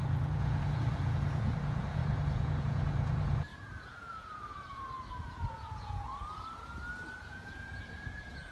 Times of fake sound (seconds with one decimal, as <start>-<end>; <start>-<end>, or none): 0.0-6.1; 7.2-8.5